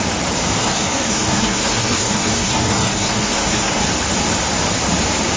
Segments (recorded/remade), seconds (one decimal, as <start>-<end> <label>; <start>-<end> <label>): 0.0-0.6 recorded; 0.6-3.8 remade; 3.8-5.4 recorded